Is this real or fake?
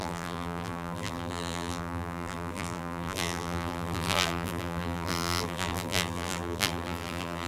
fake